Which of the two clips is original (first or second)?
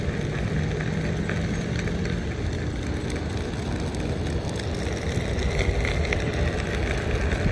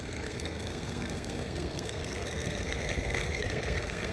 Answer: first